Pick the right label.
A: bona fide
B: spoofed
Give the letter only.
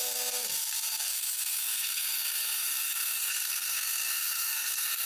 B